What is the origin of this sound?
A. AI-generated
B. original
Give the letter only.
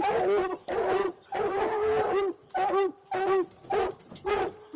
B